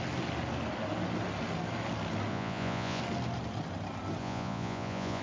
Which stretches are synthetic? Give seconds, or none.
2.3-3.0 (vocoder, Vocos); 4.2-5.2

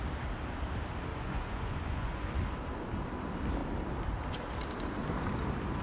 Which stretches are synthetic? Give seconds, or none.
1.1-2.3 (vocoder, Vocos)

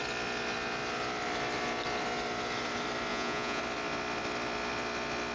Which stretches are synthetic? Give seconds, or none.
3.1-3.6 (vocoder, Vocos)

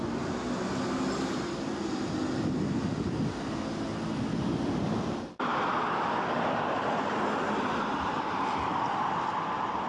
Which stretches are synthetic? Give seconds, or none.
none